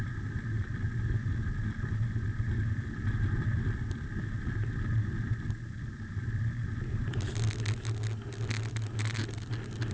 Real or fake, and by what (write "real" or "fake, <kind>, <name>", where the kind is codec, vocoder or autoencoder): real